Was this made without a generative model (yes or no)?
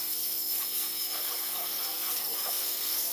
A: no